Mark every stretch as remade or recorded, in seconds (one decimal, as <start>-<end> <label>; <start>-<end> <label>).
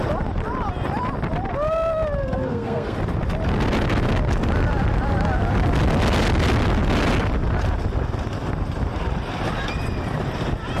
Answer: 0.0-2.2 recorded; 2.2-3.0 remade; 3.0-10.8 recorded